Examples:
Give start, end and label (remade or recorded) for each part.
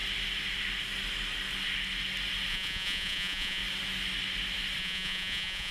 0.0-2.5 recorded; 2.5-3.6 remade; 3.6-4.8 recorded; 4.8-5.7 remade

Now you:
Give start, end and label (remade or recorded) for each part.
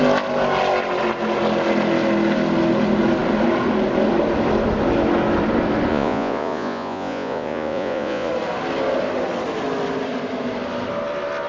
0.0-5.9 recorded; 5.9-8.3 remade; 8.3-11.5 recorded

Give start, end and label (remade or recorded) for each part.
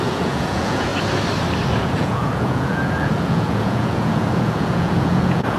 0.0-0.9 remade; 0.9-1.8 recorded; 1.8-5.6 remade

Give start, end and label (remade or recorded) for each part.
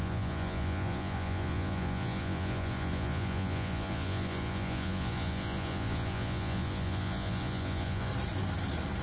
0.0-8.1 remade; 8.1-9.0 recorded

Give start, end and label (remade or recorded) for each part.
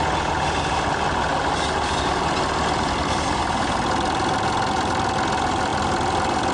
0.0-6.5 recorded